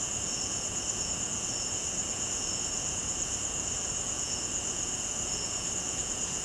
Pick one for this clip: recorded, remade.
remade